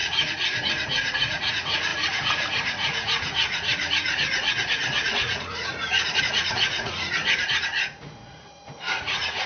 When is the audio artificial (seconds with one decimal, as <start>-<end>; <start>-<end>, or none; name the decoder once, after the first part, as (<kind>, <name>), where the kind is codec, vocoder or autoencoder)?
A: 0.0-9.5 (vocoder, Vocos)